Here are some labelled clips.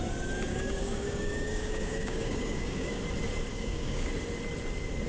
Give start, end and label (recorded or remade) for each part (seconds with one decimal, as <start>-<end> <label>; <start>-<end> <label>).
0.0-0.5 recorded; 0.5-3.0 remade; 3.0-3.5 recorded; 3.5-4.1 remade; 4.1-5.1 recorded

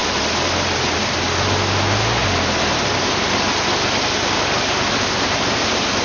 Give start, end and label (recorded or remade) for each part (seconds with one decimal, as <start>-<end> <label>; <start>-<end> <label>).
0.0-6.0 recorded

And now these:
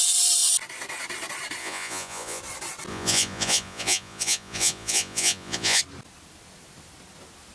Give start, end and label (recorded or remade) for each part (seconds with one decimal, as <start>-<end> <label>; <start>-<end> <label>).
0.0-1.6 recorded; 1.6-2.4 remade; 2.4-2.9 recorded; 2.9-5.8 remade; 5.8-7.5 recorded

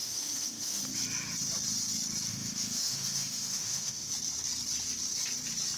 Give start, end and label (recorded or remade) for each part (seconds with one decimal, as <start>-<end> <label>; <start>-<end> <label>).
0.0-0.8 remade; 0.8-2.3 recorded; 2.3-4.1 remade; 4.1-5.8 recorded

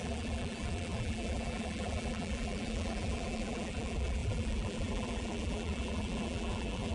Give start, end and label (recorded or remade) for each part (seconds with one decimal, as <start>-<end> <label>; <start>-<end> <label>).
0.0-6.9 remade

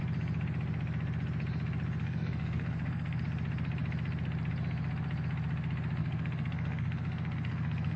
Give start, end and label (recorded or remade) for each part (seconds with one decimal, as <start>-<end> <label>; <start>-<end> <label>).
0.0-2.0 recorded; 2.0-3.2 remade; 3.2-6.0 recorded; 6.0-8.0 remade

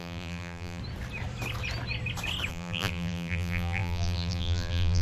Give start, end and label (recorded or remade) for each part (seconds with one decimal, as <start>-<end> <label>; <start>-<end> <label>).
0.0-0.8 remade; 0.8-2.5 recorded; 2.5-5.0 remade